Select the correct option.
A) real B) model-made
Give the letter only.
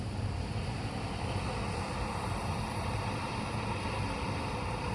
A